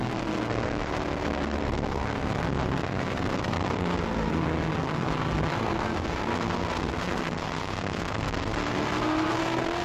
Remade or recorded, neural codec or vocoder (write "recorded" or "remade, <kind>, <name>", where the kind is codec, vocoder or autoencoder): remade, codec, SNAC